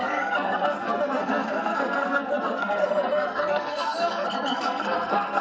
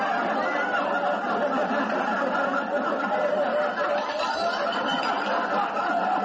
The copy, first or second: first